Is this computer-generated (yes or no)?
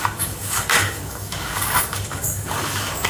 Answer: yes